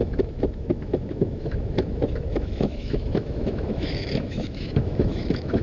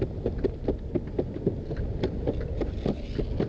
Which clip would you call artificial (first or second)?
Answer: first